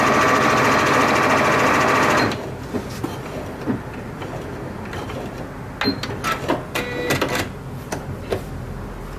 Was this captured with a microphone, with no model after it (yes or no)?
yes